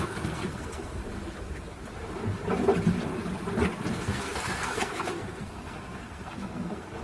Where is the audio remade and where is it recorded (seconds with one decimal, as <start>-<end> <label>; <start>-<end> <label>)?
0.0-1.0 remade; 1.0-3.9 recorded; 3.9-7.0 remade